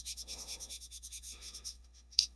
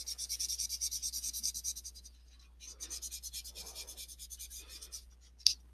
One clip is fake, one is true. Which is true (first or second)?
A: second